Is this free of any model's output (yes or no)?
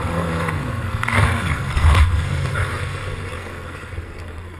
no